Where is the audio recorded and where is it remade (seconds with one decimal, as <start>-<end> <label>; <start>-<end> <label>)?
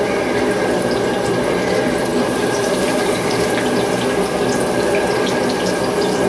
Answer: 0.0-2.1 recorded; 2.1-3.4 remade; 3.4-6.3 recorded